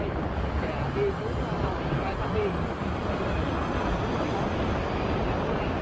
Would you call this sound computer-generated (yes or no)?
no